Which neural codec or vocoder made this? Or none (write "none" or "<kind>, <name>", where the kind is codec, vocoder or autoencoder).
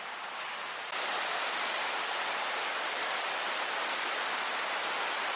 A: none